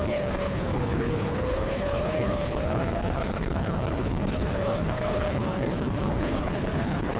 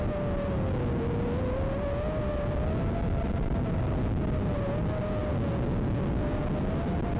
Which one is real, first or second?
second